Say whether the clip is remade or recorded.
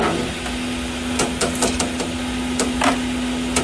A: recorded